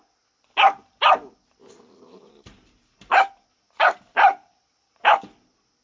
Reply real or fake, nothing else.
real